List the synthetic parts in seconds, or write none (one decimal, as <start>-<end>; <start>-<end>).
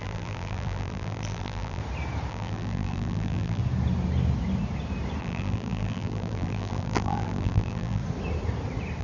0.0-1.8; 2.3-3.6; 5.2-8.0